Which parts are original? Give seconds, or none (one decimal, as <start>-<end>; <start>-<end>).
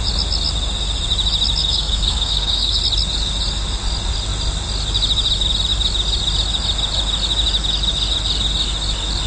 0.0-1.6; 2.8-9.3